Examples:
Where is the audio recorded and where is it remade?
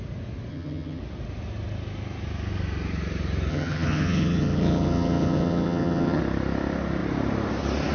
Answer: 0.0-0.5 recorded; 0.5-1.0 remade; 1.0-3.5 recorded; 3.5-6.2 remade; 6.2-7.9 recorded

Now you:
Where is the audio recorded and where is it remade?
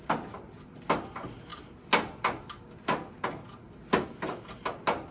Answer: 0.0-5.1 recorded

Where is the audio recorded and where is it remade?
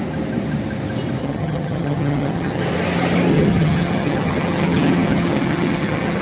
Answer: 0.0-1.2 recorded; 1.2-2.6 remade; 2.6-3.3 recorded; 3.3-6.2 remade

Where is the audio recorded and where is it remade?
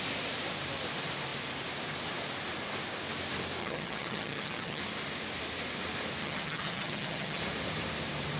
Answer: 0.0-3.6 recorded; 3.6-4.8 remade; 4.8-6.2 recorded; 6.2-7.4 remade; 7.4-8.4 recorded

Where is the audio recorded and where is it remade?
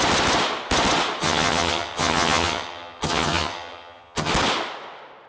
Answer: 0.0-1.2 recorded; 1.2-4.3 remade; 4.3-5.3 recorded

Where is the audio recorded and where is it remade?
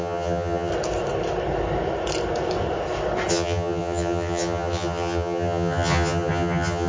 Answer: 0.0-0.7 remade; 0.7-3.3 recorded; 3.3-6.9 remade